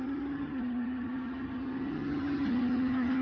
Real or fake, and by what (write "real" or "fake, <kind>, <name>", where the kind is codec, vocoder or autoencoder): fake, vocoder, HiFi-GAN